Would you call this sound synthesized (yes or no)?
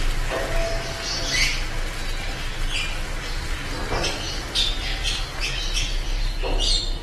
no